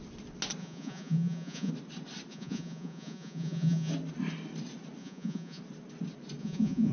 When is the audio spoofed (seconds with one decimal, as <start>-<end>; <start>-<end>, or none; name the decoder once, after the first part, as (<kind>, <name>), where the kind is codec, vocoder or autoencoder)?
0.6-1.7 (vocoder, Vocos); 2.3-3.9; 5.0-5.6; 6.4-6.9